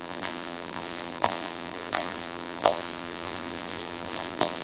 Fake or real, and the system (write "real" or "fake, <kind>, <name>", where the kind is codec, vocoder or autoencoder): fake, vocoder, BigVGAN v2